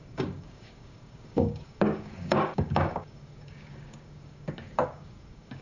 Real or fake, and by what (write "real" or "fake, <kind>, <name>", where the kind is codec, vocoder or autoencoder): fake, codec, DAC